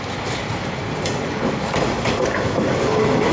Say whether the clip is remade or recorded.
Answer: recorded